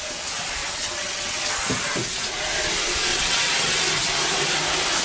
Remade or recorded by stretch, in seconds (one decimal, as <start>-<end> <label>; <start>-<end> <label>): 0.0-0.6 recorded; 0.6-1.4 remade; 1.4-3.1 recorded; 3.1-3.8 remade; 3.8-5.0 recorded